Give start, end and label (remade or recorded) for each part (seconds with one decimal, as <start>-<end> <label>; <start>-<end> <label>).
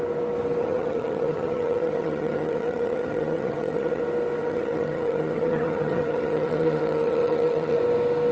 0.0-0.6 recorded; 0.6-4.0 remade; 4.0-4.4 recorded; 4.4-7.8 remade; 7.8-8.3 recorded